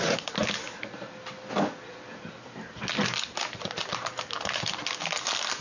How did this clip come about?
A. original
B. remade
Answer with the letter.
A